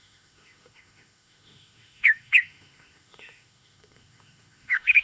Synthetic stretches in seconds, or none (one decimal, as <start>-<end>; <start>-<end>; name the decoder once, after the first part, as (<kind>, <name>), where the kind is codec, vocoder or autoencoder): 0.0-5.0 (autoencoder, DAC-VAE)